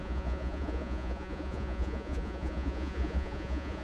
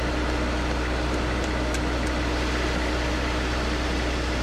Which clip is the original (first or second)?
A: second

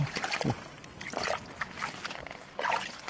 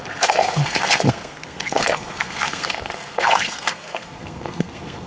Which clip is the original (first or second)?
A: first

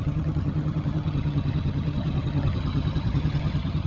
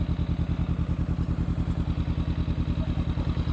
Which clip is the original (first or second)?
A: second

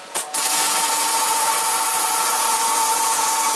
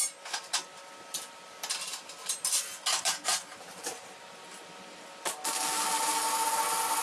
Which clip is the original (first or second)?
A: second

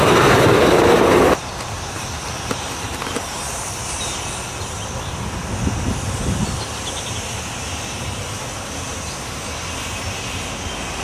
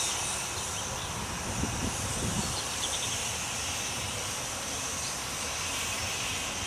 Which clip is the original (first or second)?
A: first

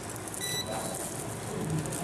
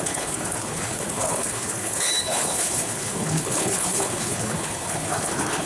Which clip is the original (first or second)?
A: first